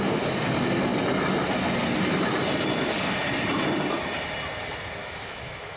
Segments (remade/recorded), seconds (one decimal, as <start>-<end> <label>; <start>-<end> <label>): 0.0-5.0 recorded; 5.0-5.8 remade